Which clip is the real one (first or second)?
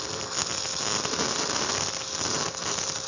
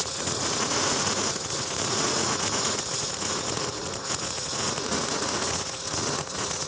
first